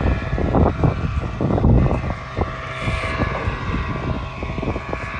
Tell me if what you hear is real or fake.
real